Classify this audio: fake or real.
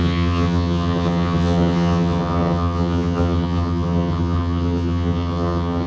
fake